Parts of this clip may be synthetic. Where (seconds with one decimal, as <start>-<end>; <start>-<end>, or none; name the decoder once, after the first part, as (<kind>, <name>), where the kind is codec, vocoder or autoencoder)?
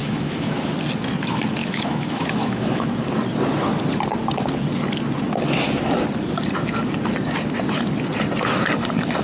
0.0-0.7 (autoencoder, DAC-VAE); 1.6-2.9